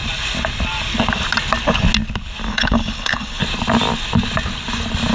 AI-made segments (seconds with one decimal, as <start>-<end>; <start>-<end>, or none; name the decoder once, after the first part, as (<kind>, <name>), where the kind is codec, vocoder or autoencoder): 2.5-3.4 (codec, HILCodec)